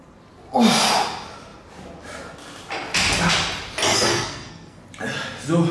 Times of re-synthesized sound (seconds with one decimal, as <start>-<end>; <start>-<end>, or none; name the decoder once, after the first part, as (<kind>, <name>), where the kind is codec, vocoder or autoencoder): 3.9-4.8 (codec, SNAC)